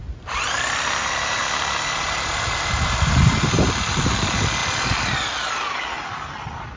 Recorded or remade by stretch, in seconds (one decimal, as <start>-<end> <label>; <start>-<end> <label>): 0.0-6.8 recorded